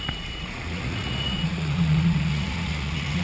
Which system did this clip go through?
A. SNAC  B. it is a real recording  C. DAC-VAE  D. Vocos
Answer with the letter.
D